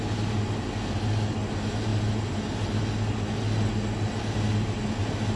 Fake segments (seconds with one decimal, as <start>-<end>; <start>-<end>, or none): none